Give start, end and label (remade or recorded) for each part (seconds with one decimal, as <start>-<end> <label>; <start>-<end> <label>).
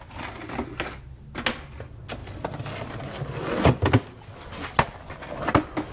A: 0.0-5.9 recorded